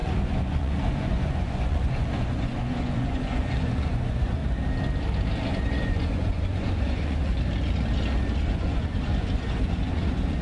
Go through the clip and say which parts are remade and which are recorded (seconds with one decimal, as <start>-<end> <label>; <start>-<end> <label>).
0.0-4.4 remade; 4.4-5.5 recorded; 5.5-7.3 remade; 7.3-8.4 recorded; 8.4-10.4 remade